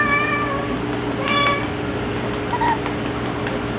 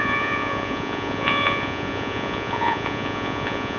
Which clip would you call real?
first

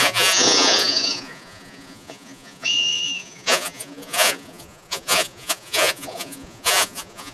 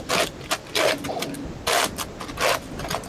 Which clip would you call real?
second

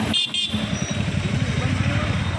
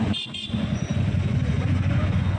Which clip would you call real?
first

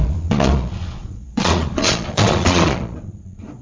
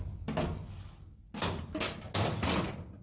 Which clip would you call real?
second